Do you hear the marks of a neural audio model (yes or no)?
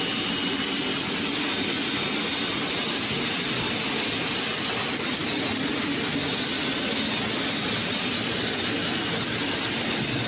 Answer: no